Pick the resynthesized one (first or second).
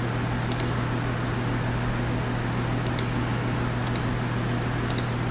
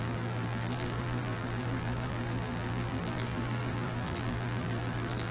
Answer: second